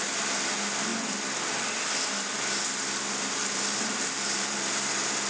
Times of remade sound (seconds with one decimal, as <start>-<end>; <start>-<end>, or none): 3.4-4.6